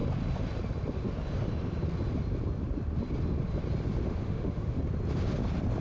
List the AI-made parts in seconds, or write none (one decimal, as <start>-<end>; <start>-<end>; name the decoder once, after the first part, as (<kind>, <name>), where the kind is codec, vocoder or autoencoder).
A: 4.0-4.8 (autoencoder, DAC-VAE)